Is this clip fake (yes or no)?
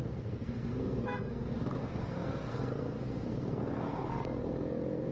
yes